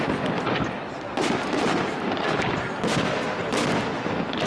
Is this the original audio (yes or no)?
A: yes